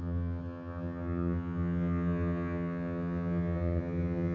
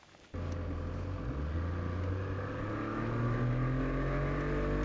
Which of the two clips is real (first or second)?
second